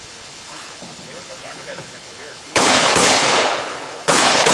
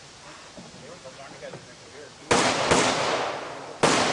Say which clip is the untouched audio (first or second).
second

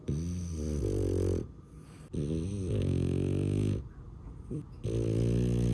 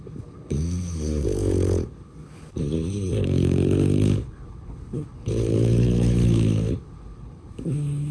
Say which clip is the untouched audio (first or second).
first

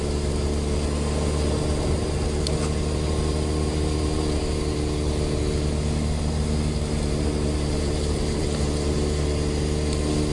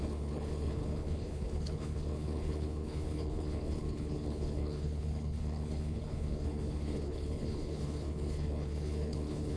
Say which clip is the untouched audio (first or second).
first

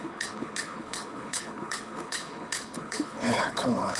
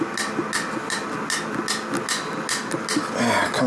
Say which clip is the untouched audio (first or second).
second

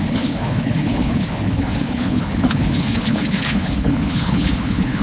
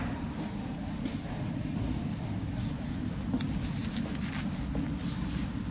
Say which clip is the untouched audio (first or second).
second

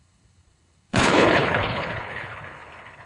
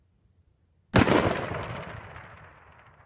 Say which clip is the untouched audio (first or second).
second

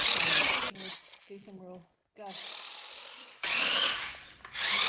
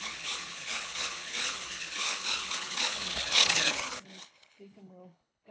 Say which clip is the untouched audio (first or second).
first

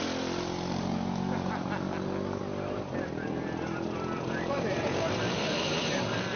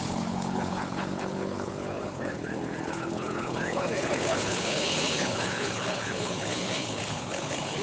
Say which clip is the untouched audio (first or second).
first